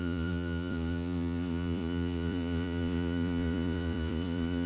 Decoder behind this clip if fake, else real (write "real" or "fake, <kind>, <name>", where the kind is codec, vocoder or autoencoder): fake, vocoder, Vocos